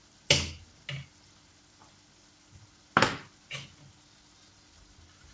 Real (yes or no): yes